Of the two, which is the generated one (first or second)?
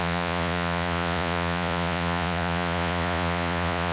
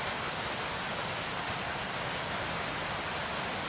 first